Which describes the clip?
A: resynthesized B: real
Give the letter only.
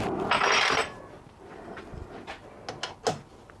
B